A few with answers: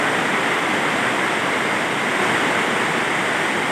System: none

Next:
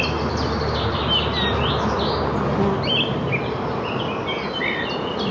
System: none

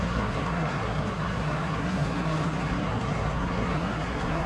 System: codec, SNAC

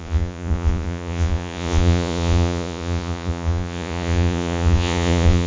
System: vocoder, Vocos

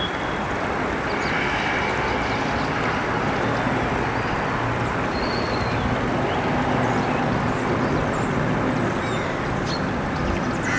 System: none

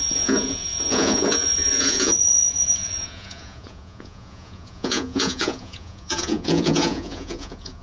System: vocoder, Vocos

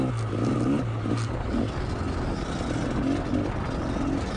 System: none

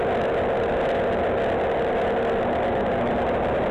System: none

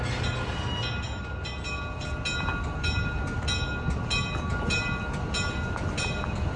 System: none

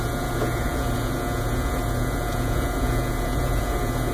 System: vocoder, Vocos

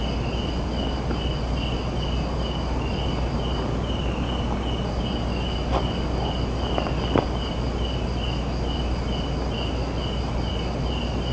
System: none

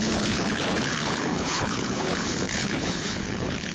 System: codec, HILCodec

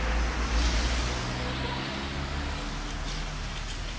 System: none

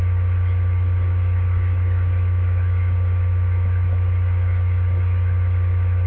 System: none